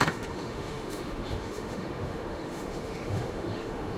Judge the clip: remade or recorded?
remade